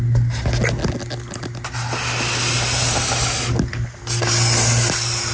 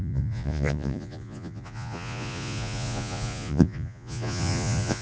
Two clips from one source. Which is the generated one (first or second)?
second